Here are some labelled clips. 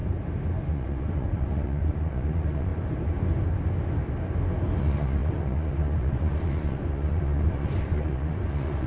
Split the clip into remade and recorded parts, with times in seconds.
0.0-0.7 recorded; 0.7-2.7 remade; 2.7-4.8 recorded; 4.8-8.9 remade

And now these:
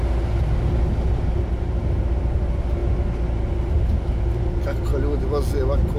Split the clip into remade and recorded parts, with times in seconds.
0.0-6.0 recorded